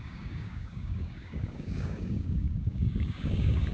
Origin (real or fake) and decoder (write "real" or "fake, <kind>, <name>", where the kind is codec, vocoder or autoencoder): fake, codec, DAC